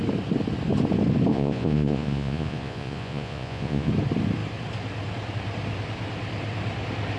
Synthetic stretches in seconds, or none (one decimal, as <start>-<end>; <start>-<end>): 1.3-3.9